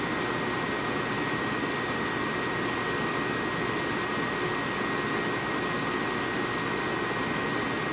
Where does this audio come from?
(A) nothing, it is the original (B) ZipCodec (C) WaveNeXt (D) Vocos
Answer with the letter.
A